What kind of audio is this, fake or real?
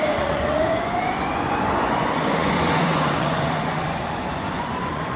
fake